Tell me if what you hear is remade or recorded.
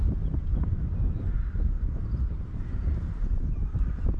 remade